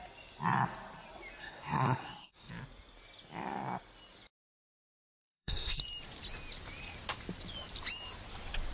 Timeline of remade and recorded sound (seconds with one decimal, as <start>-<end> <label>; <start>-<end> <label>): 0.0-1.4 recorded; 1.4-2.5 remade; 2.5-4.9 recorded; 4.9-5.8 remade; 5.8-8.7 recorded